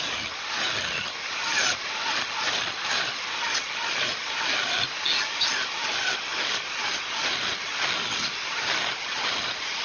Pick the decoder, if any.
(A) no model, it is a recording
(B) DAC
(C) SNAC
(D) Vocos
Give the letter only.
A